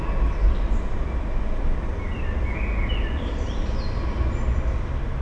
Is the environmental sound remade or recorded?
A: recorded